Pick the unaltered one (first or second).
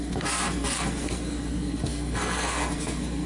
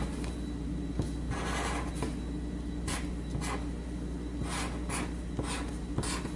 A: second